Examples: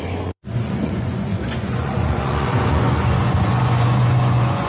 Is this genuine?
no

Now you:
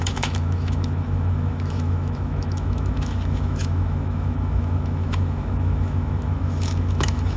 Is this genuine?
no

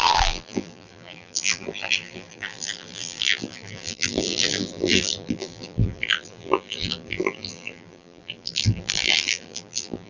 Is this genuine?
no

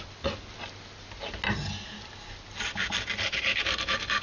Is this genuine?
yes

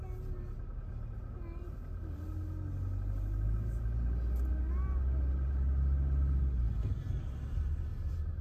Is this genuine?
yes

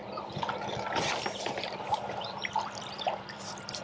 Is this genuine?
no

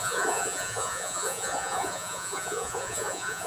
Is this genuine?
no